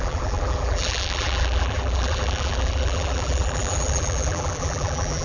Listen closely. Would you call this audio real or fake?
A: fake